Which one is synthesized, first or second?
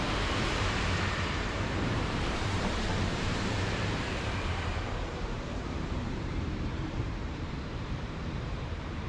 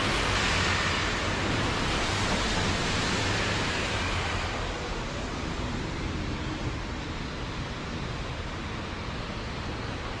first